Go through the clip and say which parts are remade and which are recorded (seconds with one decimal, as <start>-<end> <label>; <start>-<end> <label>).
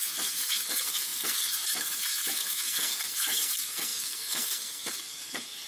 0.0-5.7 remade